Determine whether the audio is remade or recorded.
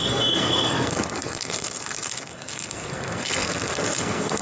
remade